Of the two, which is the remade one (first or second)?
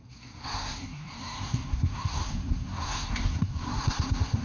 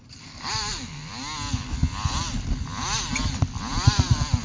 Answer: first